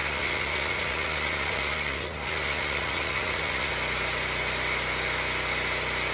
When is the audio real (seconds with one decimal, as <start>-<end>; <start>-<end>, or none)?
3.7-6.1